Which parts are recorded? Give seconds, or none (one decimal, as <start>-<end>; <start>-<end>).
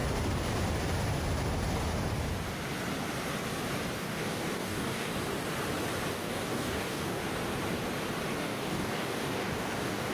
0.0-4.0; 5.1-6.1; 7.2-8.4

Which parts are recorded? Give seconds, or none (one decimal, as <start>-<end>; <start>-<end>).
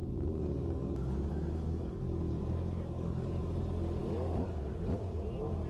3.4-4.0; 4.7-5.7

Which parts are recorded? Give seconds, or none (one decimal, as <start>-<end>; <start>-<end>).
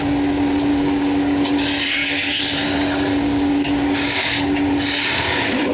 0.0-0.7; 1.6-2.0; 5.1-5.7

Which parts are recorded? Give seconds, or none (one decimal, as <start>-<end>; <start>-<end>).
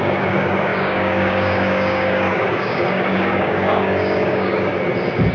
4.7-5.3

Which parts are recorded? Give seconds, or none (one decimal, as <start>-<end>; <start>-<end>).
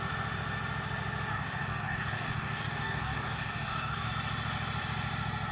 0.0-1.3; 4.1-5.5